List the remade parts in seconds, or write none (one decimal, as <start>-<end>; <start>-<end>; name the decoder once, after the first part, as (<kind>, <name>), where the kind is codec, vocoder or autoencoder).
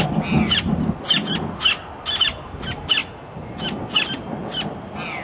none